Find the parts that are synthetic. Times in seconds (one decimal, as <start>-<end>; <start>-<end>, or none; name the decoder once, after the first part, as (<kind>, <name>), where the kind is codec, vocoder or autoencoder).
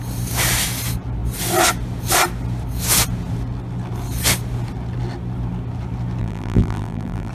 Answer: 6.2-7.3 (vocoder, BigVGAN v2)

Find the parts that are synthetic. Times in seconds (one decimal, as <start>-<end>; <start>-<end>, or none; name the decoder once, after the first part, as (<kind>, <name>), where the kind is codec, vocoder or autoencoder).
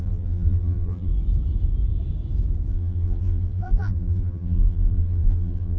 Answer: 0.0-1.1 (vocoder, BigVGAN v2); 2.7-5.8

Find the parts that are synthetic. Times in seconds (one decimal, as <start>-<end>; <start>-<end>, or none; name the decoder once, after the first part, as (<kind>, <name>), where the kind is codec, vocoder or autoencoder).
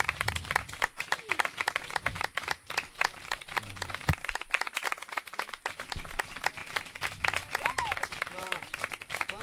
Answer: 0.0-6.6 (vocoder, BigVGAN v2); 7.7-9.4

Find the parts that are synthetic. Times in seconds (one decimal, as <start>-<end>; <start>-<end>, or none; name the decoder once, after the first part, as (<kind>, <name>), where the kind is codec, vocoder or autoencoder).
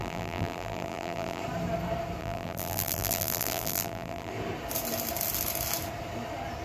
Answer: 0.0-1.4 (vocoder, BigVGAN v2); 2.2-4.3